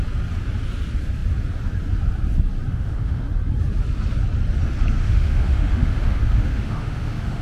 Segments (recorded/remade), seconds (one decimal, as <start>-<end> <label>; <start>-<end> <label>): 0.0-2.7 recorded; 2.7-3.2 remade; 3.2-5.0 recorded; 5.0-7.4 remade